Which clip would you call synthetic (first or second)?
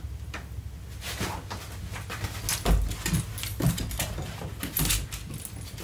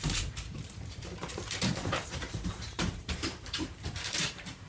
second